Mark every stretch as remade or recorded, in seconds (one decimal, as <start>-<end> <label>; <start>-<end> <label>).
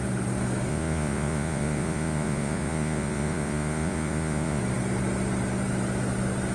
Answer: 0.0-0.7 recorded; 0.7-4.6 remade; 4.6-6.5 recorded